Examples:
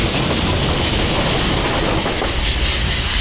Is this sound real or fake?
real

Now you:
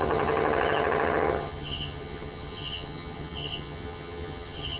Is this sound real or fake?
fake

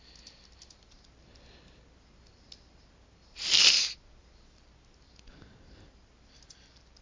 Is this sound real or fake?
real